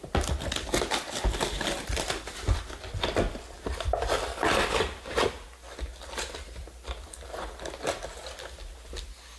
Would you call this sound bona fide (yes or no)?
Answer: yes